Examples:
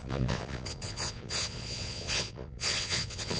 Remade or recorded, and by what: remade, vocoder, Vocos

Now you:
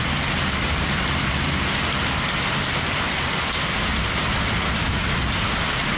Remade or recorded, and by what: recorded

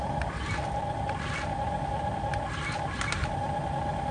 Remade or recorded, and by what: recorded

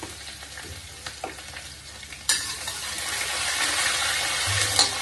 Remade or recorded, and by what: recorded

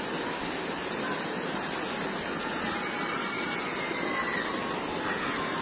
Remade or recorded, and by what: recorded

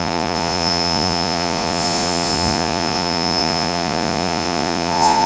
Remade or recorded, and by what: remade, vocoder, Vocos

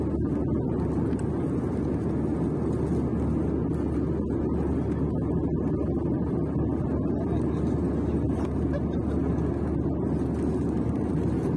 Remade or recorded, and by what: recorded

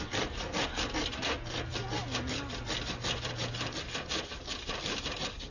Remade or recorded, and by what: recorded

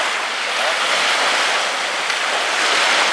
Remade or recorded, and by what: recorded